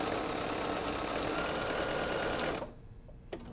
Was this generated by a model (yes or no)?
no